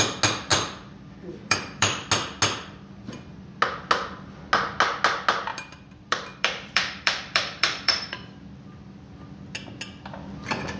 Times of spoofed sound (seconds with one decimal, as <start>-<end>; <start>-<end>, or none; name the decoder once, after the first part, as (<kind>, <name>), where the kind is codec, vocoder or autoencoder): 0.5-2.1 (vocoder, BigVGAN v2); 5.5-8.4